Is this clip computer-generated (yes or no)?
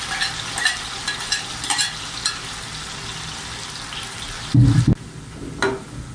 no